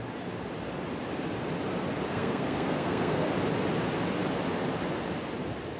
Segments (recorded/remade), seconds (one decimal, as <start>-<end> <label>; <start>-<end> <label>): 0.0-2.1 recorded; 2.1-3.3 remade; 3.3-5.8 recorded